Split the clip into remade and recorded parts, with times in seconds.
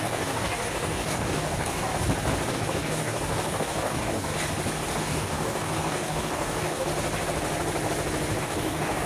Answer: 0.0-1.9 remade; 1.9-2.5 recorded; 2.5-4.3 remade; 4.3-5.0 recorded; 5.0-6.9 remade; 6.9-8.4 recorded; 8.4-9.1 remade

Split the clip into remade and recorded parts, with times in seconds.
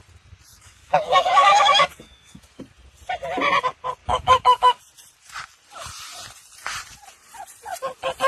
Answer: 0.0-0.5 recorded; 0.5-2.6 remade; 2.6-4.0 recorded; 4.0-4.8 remade; 4.8-8.3 recorded